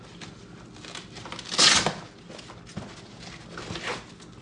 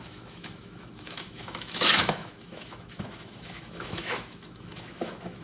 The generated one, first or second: second